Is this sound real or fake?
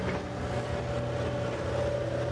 real